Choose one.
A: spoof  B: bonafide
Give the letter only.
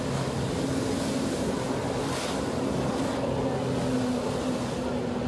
B